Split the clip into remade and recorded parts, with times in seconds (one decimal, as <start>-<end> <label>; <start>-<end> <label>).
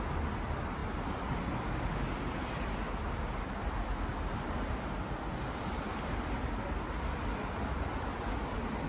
0.0-8.9 recorded